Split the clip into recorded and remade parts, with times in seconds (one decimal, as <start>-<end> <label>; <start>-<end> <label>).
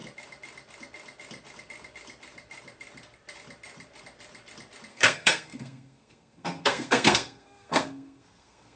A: 0.0-4.9 recorded; 4.9-8.8 remade